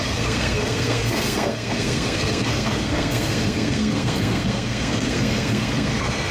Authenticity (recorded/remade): remade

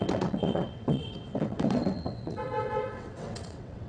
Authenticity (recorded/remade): remade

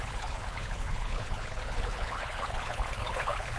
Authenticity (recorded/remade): remade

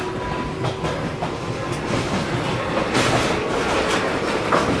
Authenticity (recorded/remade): recorded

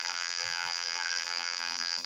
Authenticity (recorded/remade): remade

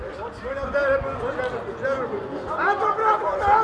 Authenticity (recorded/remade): recorded